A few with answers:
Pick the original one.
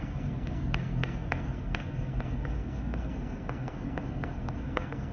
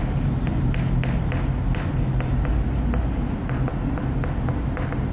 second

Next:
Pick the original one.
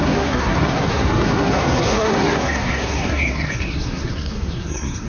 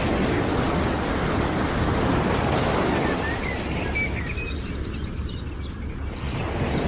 second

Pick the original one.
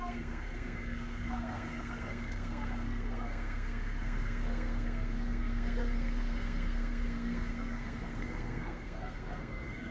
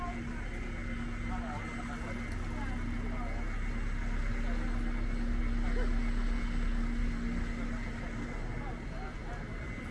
second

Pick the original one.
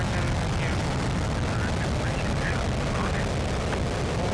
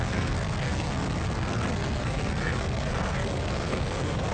first